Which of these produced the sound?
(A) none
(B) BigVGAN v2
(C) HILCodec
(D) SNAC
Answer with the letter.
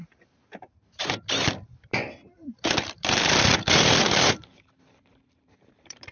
B